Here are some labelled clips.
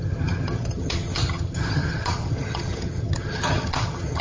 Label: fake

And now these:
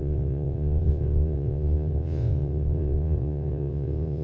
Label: fake